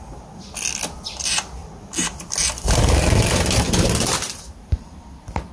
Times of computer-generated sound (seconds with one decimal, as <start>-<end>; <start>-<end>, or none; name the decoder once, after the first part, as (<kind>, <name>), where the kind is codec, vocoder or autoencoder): none